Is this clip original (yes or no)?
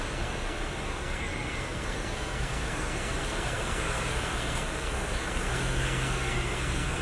no